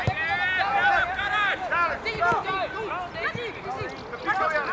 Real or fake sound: real